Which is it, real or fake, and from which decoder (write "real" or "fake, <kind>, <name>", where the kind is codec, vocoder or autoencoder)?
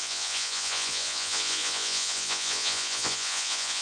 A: fake, vocoder, Vocos